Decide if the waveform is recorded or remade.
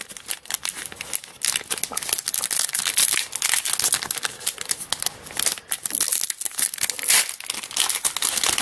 recorded